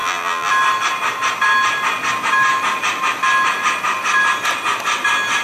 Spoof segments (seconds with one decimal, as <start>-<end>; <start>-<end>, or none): 0.0-0.5